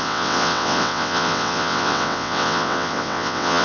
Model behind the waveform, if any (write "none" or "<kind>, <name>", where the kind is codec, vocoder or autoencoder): vocoder, WaveNeXt